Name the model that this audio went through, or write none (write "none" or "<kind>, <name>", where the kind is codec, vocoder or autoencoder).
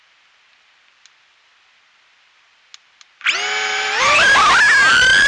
none